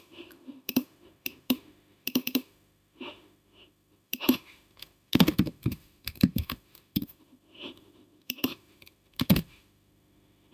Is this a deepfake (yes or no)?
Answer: yes